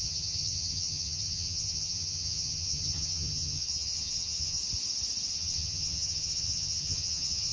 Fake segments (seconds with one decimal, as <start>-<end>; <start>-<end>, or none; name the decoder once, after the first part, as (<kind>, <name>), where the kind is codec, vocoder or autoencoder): 0.0-4.6 (vocoder, HiFi-GAN); 5.3-7.5